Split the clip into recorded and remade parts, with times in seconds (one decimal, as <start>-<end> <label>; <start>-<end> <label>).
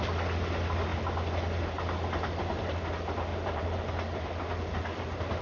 0.0-3.3 recorded; 3.3-3.8 remade; 3.8-5.4 recorded